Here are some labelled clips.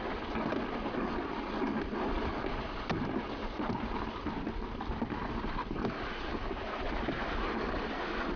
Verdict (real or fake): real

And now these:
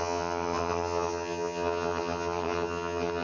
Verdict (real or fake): fake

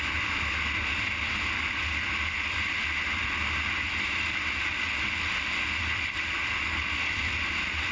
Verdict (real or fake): real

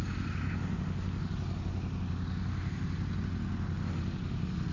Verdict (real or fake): real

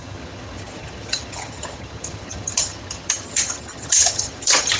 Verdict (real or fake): fake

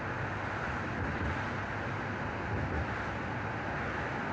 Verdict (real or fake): real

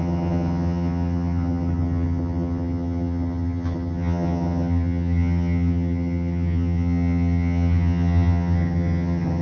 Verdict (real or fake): fake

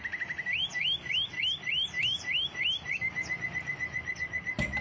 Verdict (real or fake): real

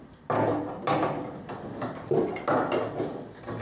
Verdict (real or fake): real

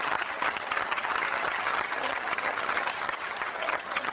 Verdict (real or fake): fake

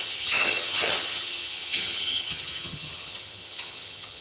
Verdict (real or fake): fake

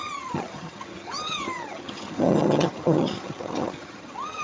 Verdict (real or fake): fake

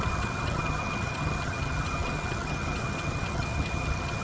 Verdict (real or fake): fake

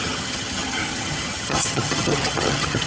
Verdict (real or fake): fake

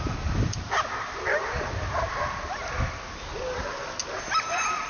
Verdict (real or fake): real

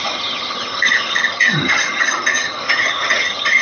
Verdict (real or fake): fake